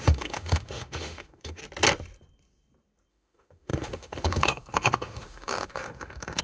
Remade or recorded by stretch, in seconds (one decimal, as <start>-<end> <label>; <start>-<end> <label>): 0.0-1.6 remade; 1.6-3.1 recorded; 3.1-6.4 remade